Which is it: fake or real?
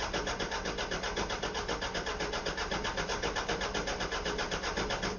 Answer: real